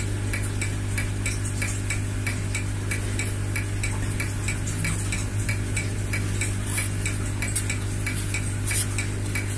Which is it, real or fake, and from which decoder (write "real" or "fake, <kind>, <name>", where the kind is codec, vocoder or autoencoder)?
real